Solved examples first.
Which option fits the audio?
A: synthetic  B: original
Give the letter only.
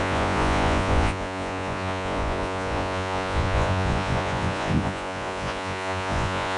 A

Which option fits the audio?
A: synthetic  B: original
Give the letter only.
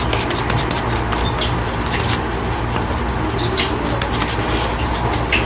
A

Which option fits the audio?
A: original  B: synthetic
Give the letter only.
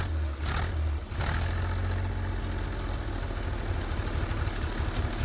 A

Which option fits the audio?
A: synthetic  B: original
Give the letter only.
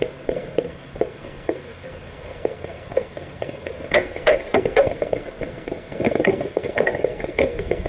A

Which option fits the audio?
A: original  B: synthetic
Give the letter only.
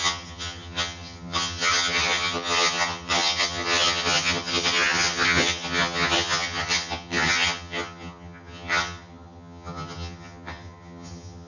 B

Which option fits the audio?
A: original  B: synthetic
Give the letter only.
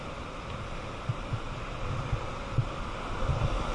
A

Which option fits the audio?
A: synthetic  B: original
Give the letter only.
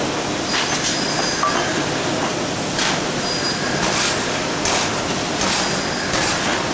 B